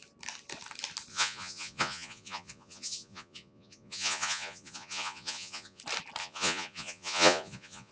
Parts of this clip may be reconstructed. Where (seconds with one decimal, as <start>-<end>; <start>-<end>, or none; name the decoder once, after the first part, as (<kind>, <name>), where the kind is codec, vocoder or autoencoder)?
1.1-5.8 (vocoder, Vocos); 6.2-7.9